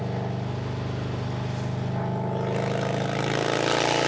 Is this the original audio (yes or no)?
yes